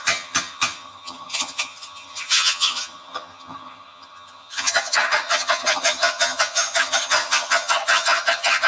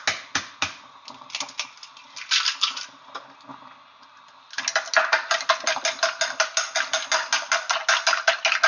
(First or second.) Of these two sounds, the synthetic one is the first